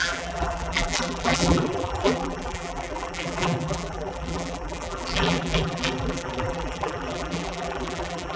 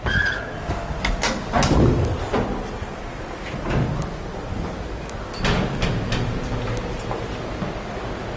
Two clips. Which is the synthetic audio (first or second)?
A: first